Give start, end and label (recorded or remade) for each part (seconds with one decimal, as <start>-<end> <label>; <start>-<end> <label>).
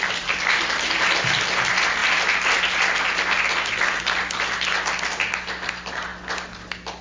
0.0-7.0 recorded